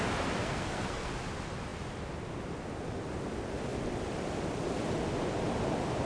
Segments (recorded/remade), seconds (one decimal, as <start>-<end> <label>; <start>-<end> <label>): 0.0-0.4 recorded; 0.4-1.1 remade; 1.1-6.1 recorded